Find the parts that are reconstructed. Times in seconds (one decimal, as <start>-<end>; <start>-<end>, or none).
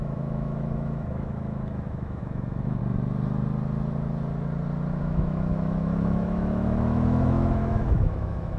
0.0-2.8; 5.0-8.6